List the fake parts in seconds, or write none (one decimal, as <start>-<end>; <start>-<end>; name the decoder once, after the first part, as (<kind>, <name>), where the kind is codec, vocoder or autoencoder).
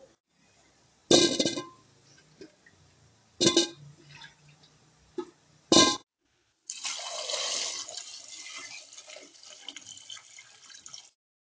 none